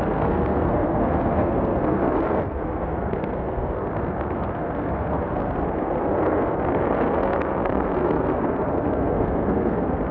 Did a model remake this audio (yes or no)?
yes